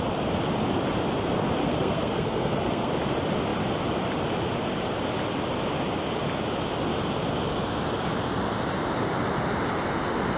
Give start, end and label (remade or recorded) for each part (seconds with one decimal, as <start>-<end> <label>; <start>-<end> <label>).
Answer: 0.0-1.6 recorded; 1.6-2.9 remade; 2.9-10.4 recorded